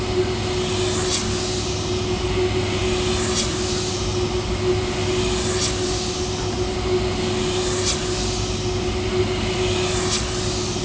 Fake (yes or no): no